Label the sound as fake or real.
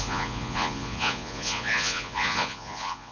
fake